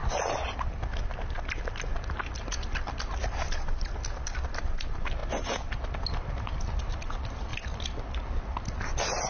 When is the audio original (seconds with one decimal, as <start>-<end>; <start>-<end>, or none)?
0.0-9.3